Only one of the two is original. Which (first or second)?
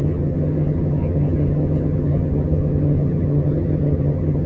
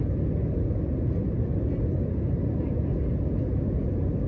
second